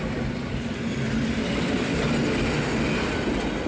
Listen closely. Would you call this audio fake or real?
real